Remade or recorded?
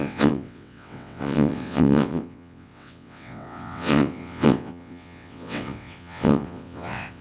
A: remade